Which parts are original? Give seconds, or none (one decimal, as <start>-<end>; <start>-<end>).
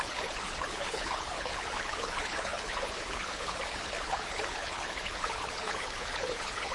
none